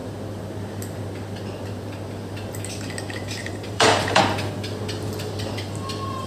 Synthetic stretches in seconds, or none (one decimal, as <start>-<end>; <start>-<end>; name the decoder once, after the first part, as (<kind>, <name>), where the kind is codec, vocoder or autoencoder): 3.4-4.2 (vocoder, BigVGAN v2)